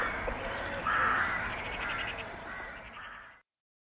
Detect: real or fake real